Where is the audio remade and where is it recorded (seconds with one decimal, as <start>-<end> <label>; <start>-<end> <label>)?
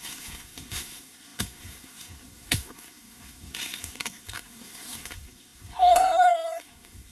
0.0-7.1 remade